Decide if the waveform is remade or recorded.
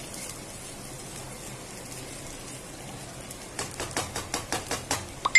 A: recorded